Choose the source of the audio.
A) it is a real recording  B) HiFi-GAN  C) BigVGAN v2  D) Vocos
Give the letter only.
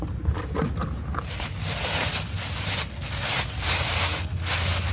A